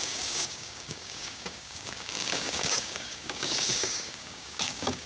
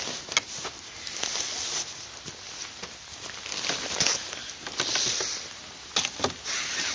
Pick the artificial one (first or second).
first